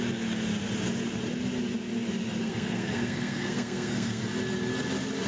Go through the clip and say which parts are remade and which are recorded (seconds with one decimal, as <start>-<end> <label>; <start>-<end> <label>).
0.0-2.4 recorded; 2.4-4.2 remade; 4.2-5.3 recorded